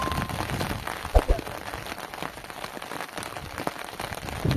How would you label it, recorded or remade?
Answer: recorded